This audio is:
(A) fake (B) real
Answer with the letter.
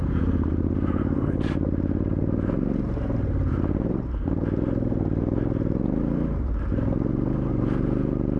A